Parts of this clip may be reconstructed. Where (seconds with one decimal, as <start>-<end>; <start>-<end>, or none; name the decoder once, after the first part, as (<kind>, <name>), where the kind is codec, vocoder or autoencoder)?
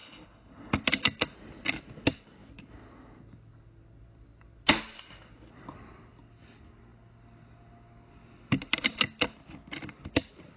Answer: 0.0-0.8 (codec, HILCodec)